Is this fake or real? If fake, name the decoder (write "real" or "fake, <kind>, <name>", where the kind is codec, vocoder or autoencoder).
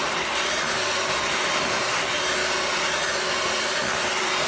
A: real